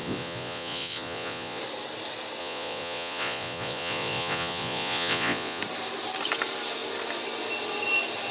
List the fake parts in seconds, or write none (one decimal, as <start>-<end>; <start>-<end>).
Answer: 0.0-1.6; 2.4-5.6